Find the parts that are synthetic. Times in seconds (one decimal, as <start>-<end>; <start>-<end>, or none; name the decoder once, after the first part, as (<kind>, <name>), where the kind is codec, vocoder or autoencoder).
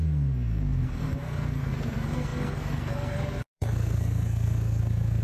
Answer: 0.0-5.2 (codec, SNAC)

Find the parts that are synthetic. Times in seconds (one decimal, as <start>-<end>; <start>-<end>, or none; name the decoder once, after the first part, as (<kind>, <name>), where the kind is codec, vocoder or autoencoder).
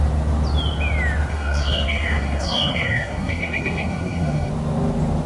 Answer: 1.3-4.5 (codec, SNAC)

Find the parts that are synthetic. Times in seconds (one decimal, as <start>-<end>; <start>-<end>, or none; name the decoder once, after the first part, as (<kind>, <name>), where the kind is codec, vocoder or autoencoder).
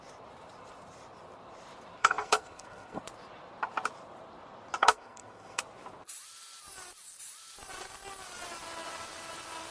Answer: 2.0-3.0 (codec, SNAC); 4.8-5.6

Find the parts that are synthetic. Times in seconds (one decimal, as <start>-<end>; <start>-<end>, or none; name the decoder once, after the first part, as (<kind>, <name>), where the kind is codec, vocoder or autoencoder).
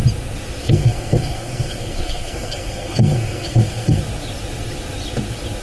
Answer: 0.6-4.0 (codec, SNAC)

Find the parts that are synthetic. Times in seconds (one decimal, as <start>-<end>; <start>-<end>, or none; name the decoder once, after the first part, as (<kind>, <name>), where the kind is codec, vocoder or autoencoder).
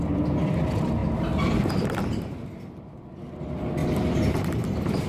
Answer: none